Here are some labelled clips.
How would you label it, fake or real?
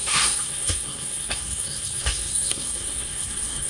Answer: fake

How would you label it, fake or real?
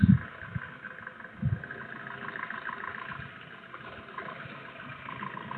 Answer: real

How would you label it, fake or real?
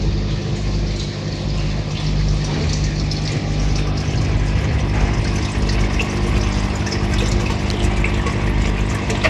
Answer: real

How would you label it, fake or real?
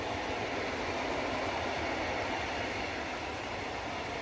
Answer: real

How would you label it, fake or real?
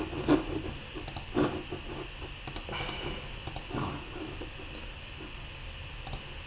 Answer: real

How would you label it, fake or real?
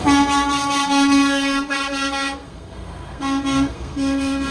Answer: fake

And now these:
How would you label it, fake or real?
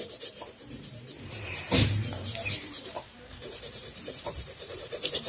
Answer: fake